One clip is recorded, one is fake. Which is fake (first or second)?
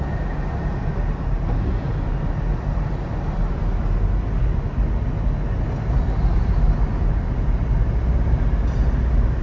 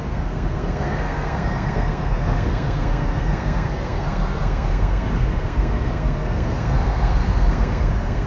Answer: second